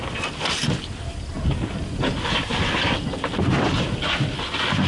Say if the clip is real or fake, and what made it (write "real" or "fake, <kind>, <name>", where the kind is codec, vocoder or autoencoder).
real